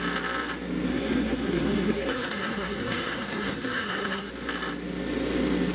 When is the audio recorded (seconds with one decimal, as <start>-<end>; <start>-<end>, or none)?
0.0-0.9; 4.3-5.7